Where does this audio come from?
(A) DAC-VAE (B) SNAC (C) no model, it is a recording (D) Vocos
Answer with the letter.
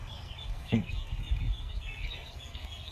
B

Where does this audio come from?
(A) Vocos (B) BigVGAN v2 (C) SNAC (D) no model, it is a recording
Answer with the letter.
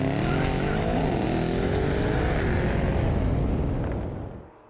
D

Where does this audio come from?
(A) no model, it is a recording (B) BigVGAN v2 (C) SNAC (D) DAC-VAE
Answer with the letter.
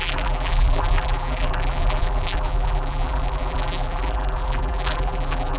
B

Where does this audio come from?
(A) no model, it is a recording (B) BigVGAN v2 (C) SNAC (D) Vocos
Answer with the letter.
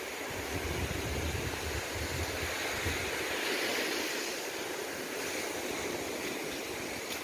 A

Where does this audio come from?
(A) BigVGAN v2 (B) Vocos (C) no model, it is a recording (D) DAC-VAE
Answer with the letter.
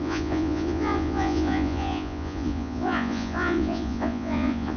B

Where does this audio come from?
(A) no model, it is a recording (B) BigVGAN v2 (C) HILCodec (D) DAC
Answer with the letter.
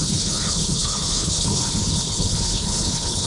C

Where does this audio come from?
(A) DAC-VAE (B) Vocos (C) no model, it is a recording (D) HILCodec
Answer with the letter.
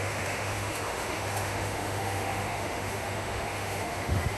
A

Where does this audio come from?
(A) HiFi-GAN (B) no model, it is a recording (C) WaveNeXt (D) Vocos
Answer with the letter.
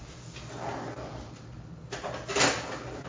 B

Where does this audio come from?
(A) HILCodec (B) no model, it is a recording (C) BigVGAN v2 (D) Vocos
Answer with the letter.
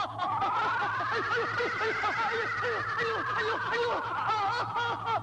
B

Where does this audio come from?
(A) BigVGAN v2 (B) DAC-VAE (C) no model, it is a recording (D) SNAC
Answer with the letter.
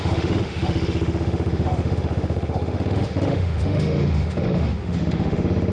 B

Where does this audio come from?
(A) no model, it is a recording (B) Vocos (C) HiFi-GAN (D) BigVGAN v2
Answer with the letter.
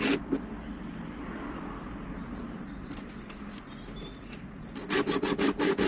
A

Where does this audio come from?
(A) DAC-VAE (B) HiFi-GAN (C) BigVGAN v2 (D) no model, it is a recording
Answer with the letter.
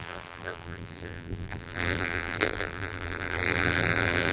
C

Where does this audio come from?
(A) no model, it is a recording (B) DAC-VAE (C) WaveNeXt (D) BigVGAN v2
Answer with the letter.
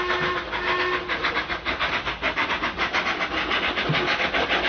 A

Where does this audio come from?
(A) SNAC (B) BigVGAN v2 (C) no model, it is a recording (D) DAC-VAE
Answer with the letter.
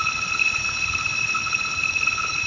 C